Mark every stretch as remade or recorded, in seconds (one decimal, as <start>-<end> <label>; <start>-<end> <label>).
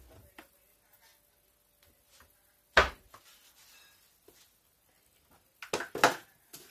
0.0-6.7 recorded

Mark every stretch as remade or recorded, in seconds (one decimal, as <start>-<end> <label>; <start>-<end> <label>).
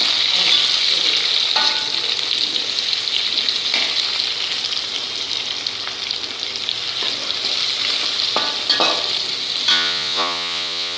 0.0-9.7 recorded; 9.7-11.0 remade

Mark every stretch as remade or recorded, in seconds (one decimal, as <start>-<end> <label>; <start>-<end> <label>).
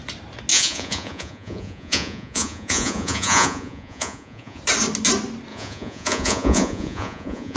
0.0-0.5 recorded; 0.5-4.6 remade; 4.6-5.5 recorded; 5.5-7.6 remade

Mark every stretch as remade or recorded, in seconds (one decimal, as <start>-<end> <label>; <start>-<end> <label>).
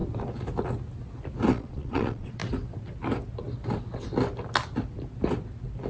0.0-1.5 recorded; 1.5-2.4 remade; 2.4-5.9 recorded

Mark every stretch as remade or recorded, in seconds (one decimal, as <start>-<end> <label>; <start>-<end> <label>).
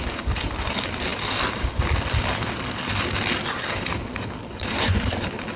0.0-4.5 recorded; 4.5-5.0 remade; 5.0-5.6 recorded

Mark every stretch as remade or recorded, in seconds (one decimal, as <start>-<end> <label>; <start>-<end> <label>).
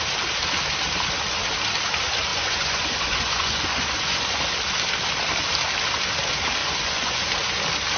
0.0-2.3 recorded; 2.3-4.4 remade; 4.4-6.6 recorded; 6.6-7.3 remade; 7.3-8.0 recorded